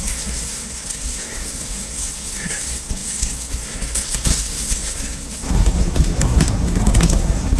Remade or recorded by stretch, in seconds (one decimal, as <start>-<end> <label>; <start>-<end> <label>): 0.0-7.6 remade